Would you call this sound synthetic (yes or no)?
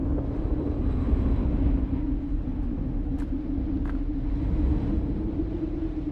no